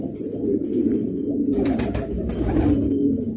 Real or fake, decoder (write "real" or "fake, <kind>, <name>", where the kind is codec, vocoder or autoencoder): real